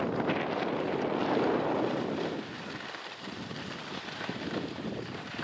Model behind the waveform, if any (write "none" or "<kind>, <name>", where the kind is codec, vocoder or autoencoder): none